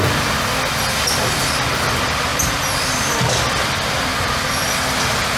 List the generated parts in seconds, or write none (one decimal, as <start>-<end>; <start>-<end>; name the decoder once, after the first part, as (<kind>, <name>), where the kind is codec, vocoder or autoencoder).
2.3-3.1 (vocoder, BigVGAN v2); 4.1-4.7